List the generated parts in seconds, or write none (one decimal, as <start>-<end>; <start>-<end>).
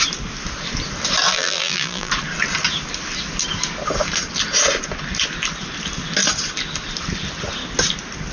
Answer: 1.3-2.1